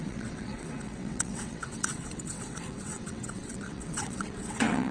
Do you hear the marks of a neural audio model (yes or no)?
yes